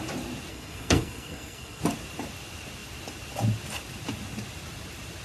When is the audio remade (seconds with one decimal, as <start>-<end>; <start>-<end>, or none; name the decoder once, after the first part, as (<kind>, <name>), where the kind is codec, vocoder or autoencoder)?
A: 0.5-1.8 (codec, SNAC)